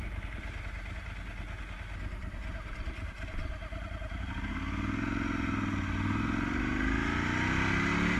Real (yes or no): yes